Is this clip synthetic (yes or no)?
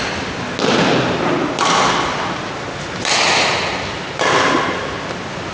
no